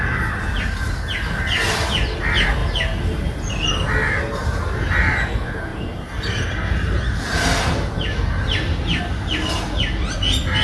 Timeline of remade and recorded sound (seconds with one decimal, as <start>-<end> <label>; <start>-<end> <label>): 0.0-10.6 recorded